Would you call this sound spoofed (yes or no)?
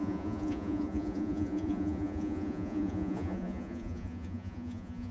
yes